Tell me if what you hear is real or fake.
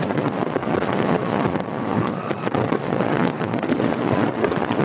fake